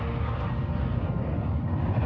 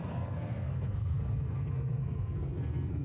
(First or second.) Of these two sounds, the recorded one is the first